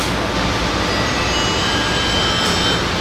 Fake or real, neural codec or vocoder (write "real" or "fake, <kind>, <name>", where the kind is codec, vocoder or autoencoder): real